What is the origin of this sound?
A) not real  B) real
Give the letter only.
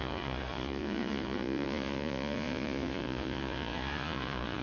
A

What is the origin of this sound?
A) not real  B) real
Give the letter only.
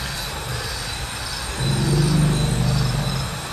B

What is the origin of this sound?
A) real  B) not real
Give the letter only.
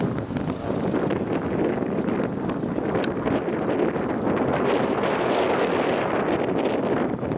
A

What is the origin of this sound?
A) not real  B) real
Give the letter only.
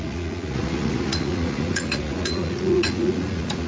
A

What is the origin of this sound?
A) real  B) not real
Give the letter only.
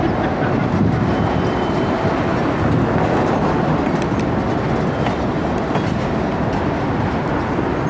A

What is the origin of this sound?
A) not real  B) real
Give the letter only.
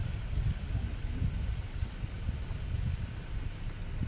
B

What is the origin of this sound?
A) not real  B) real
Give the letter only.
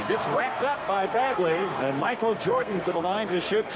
A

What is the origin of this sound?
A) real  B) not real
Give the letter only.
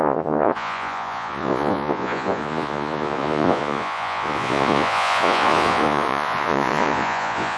B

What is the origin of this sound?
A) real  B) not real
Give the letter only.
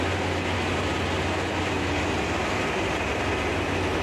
A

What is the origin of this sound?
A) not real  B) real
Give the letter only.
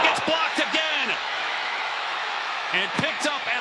A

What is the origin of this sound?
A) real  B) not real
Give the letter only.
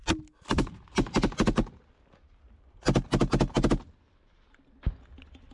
A